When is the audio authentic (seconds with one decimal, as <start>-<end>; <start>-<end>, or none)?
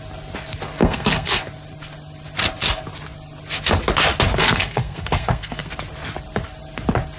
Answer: 0.0-0.8; 1.4-4.4; 5.7-7.2